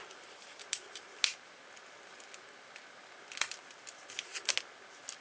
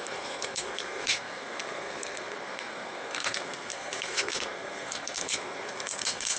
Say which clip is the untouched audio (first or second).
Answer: first